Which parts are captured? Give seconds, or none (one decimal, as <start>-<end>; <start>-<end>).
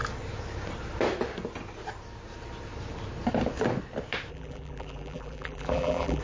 0.0-4.3